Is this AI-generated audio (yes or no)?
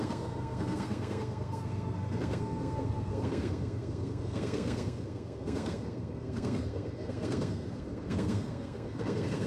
yes